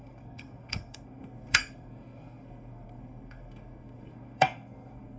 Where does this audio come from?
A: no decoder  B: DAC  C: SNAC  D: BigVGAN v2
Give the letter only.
C